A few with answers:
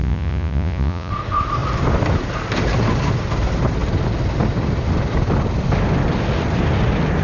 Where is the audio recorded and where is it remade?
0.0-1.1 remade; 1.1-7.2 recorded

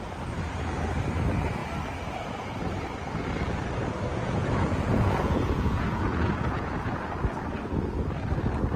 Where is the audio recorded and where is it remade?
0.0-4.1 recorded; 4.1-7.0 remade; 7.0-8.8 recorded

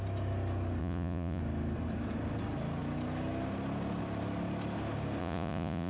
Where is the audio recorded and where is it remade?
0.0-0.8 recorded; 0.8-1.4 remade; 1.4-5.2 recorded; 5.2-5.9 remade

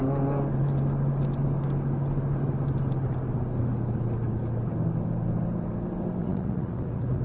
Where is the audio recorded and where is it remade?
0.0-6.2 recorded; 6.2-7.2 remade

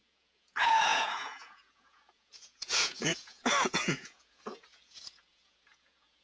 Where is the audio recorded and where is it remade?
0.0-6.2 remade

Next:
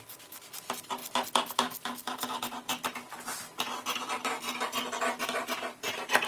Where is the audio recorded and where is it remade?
0.0-6.3 recorded

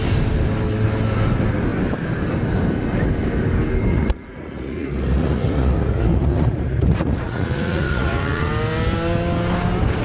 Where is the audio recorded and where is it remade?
0.0-3.9 recorded; 3.9-8.5 remade; 8.5-10.0 recorded

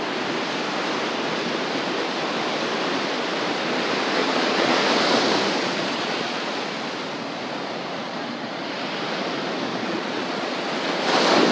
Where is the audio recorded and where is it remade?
0.0-4.2 recorded; 4.2-4.8 remade; 4.8-5.6 recorded; 5.6-6.5 remade; 6.5-8.0 recorded; 8.0-8.6 remade; 8.6-9.7 recorded; 9.7-10.7 remade; 10.7-11.5 recorded